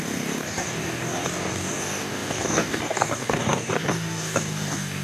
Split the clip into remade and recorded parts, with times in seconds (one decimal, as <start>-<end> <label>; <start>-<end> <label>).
0.0-5.0 remade